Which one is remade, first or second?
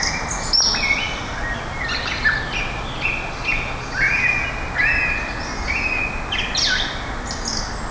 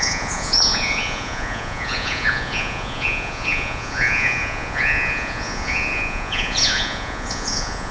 second